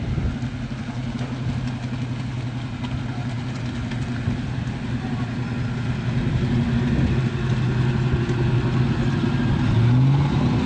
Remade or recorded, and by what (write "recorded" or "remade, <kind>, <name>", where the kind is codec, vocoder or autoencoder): recorded